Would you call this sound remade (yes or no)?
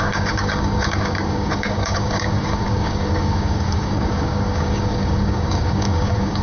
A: yes